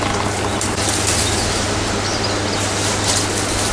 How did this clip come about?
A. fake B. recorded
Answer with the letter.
B